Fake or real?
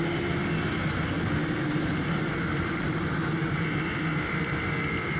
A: real